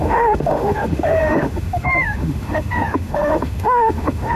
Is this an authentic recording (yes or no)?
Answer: no